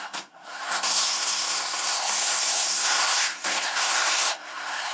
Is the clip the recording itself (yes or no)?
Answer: no